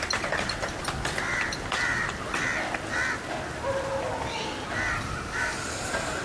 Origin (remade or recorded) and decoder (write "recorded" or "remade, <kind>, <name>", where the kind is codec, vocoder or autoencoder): recorded